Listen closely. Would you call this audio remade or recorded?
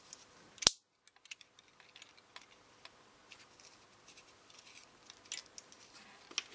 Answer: recorded